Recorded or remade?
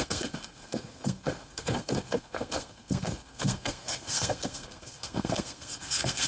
remade